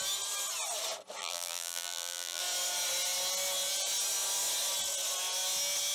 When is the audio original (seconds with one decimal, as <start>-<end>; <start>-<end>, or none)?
0.0-1.2; 2.4-5.9